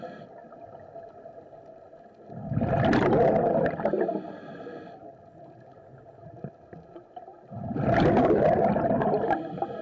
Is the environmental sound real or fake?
real